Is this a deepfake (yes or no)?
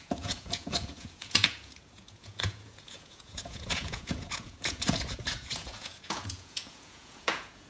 yes